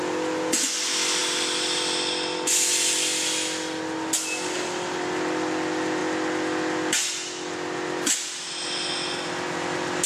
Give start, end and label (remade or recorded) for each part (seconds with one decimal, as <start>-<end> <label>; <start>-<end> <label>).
0.0-10.1 recorded